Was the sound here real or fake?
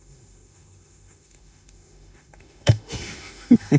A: fake